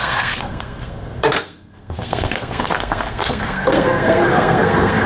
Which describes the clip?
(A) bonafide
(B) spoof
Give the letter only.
B